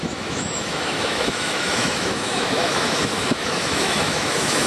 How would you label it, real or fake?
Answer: fake